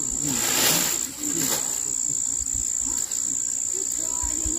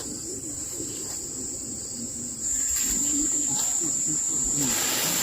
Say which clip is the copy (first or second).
second